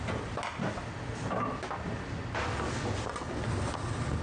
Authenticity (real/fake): real